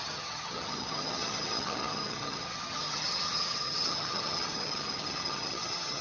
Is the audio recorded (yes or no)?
no